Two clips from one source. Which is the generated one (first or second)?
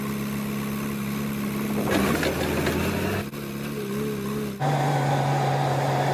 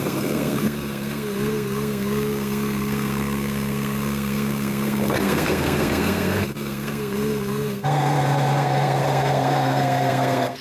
second